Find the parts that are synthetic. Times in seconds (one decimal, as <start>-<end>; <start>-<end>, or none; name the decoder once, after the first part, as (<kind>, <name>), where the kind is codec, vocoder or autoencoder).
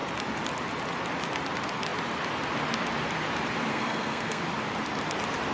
3.7-4.4 (codec, SNAC)